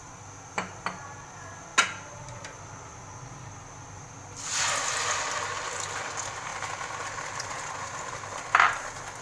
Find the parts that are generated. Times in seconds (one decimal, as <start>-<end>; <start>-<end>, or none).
none

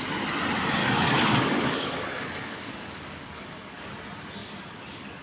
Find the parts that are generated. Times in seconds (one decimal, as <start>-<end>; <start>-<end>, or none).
0.8-3.9; 4.4-5.2